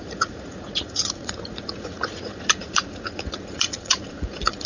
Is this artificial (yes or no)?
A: yes